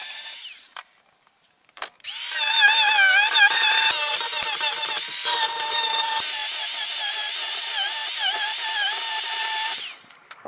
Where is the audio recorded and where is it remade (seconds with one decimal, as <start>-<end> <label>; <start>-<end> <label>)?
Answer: 0.0-2.1 remade; 2.1-3.5 recorded; 3.5-10.5 remade